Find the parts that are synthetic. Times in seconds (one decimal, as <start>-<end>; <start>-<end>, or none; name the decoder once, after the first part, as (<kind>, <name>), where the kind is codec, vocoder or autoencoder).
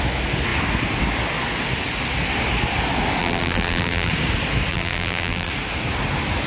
3.2-4.1 (vocoder, BigVGAN v2); 4.7-5.5